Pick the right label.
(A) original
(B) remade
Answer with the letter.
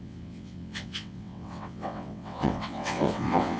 B